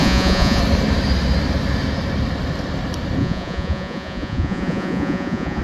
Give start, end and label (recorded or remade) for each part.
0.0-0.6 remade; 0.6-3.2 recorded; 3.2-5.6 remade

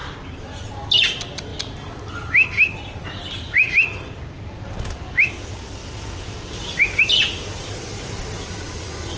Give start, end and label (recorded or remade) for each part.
0.0-0.5 remade; 0.5-1.5 recorded; 1.5-5.3 remade; 5.3-5.8 recorded; 5.8-6.5 remade; 6.5-9.2 recorded

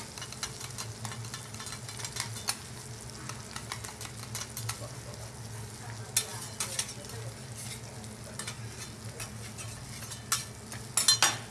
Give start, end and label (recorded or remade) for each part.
0.0-11.5 recorded

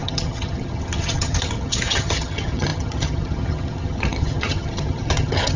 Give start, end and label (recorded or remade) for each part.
0.0-5.6 remade

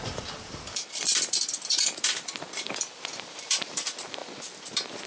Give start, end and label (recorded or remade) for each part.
0.0-3.1 remade; 3.1-3.7 recorded; 3.7-4.2 remade; 4.2-5.1 recorded

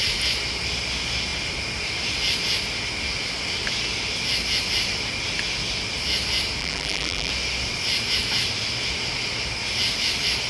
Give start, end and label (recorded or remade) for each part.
0.0-6.6 recorded; 6.6-7.3 remade; 7.3-10.5 recorded

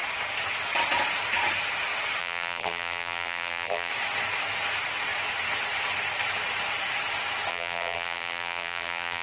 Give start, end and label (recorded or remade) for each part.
0.0-2.2 recorded; 2.2-3.9 remade; 3.9-7.5 recorded; 7.5-9.2 remade